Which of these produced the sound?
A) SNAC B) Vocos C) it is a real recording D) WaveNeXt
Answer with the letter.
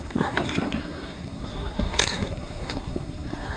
A